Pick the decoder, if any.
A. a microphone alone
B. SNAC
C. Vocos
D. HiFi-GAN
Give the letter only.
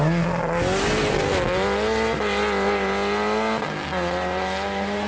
A